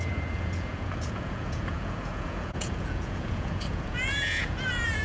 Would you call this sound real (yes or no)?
no